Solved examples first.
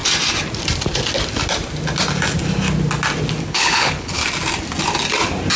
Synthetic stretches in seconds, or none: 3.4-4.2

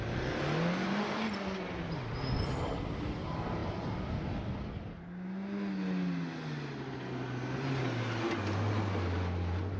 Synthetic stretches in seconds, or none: none

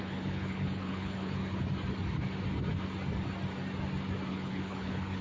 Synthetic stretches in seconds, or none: 0.0-1.4; 4.3-5.2

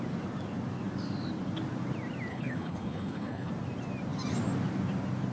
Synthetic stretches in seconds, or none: 2.3-3.5

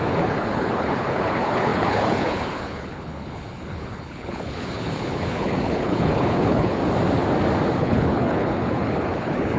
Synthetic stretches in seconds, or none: 0.0-6.8; 7.8-9.6

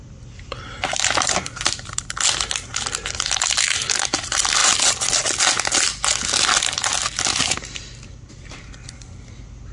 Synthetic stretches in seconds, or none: none

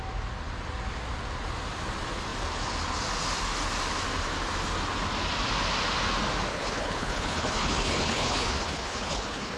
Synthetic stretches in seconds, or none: 6.5-9.6